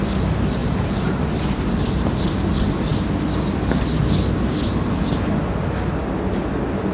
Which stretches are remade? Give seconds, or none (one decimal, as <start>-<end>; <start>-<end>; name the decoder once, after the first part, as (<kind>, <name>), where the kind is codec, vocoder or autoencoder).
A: none